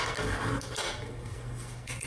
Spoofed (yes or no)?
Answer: yes